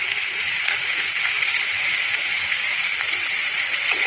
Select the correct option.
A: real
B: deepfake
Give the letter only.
B